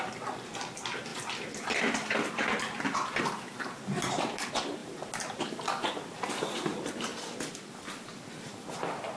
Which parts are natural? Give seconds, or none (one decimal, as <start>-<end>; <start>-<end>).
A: 7.1-7.7